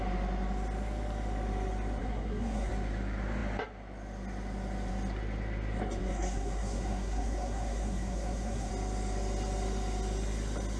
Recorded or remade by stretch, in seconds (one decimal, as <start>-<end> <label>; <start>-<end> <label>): 0.0-2.0 recorded; 2.0-2.7 remade; 2.7-6.0 recorded; 6.0-8.7 remade; 8.7-10.8 recorded